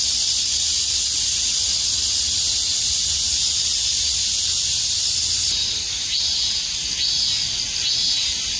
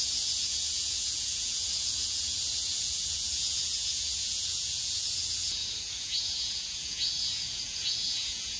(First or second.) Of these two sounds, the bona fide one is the first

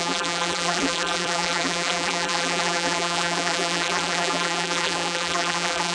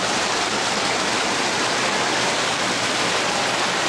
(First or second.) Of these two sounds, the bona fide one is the second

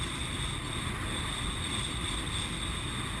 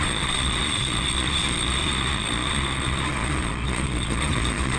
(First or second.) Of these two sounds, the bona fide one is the first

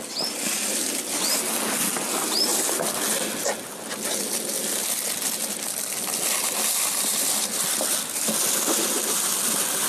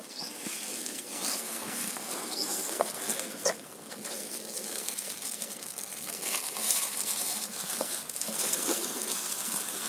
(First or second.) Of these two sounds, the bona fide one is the first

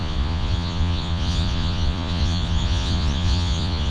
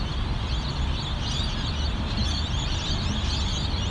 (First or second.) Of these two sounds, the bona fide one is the second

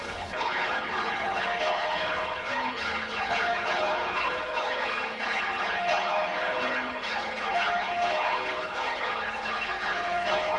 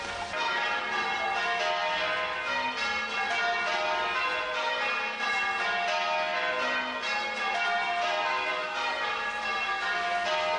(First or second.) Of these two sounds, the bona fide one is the second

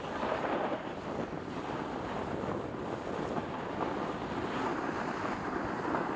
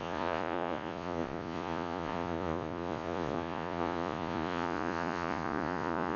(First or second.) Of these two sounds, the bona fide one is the first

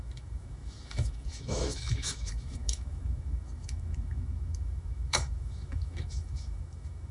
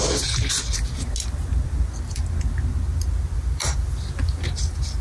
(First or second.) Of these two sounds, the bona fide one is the second